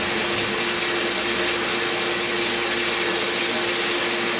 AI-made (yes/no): no